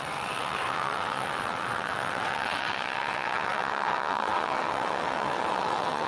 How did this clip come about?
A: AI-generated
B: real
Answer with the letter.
A